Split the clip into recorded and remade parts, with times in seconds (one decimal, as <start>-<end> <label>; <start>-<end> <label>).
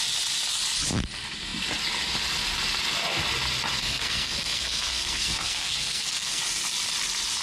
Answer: 0.0-3.7 recorded; 3.7-6.4 remade; 6.4-7.4 recorded